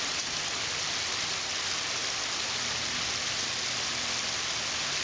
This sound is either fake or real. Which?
real